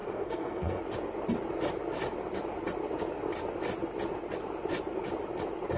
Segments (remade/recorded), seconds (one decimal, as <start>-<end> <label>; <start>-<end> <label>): 0.0-0.8 remade; 0.8-5.8 recorded